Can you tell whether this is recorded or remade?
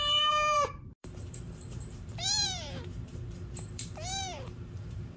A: remade